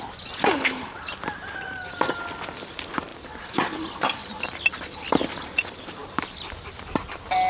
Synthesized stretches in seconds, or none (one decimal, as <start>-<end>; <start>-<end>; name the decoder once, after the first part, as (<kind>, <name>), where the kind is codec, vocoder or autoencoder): none